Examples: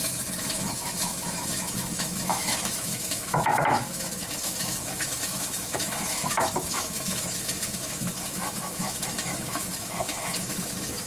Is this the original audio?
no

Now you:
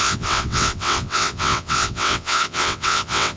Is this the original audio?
no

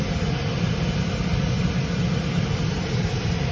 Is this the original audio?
yes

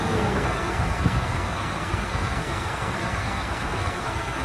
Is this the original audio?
no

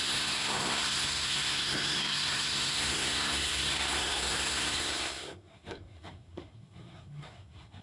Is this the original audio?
no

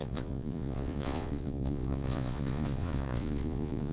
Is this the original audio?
no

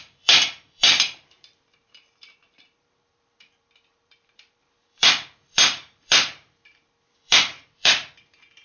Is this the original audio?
no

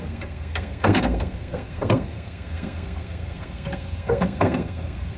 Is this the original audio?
no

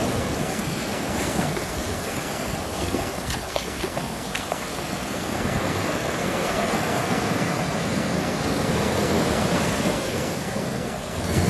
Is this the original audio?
no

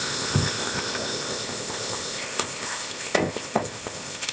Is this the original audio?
no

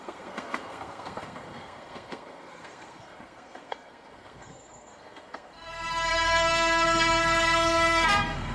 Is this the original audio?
no